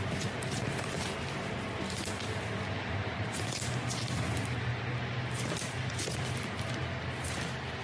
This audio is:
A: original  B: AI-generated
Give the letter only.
A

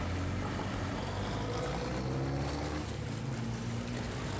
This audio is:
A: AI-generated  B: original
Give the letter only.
B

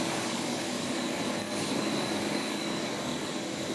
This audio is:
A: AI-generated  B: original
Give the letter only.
A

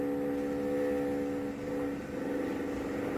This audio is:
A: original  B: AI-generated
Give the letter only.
A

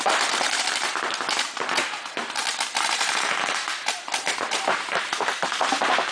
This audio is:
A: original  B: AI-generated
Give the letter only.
B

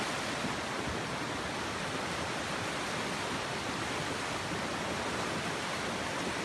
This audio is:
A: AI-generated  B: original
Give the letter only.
B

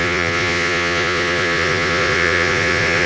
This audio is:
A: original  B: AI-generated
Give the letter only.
B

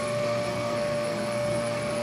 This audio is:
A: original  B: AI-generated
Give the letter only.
B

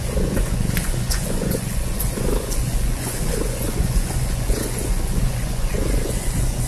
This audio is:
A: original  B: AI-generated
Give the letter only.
B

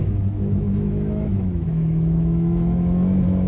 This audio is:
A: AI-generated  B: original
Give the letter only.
A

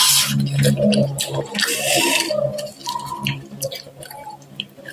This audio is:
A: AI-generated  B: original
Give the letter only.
B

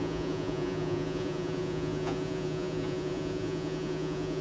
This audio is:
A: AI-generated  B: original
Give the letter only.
A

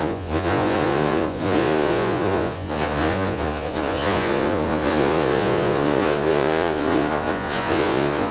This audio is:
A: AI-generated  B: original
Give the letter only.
A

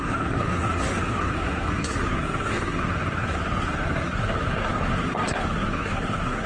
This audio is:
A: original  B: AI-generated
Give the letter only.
B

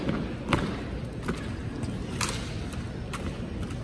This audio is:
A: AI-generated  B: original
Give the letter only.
B